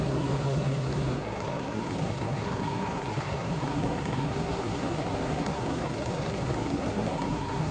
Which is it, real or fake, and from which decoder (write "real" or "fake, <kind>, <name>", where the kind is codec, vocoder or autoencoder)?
fake, codec, SNAC